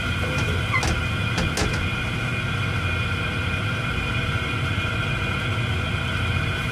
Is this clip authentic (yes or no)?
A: yes